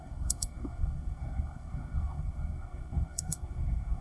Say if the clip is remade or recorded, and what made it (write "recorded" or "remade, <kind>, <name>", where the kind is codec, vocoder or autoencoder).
remade, codec, SNAC